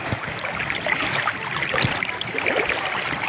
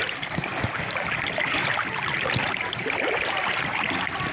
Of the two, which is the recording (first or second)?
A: second